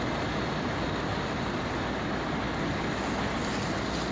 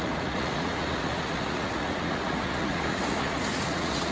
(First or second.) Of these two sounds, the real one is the first